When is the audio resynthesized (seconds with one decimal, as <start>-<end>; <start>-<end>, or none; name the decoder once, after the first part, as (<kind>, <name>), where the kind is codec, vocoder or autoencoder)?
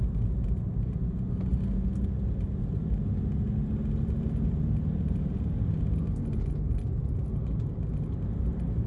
none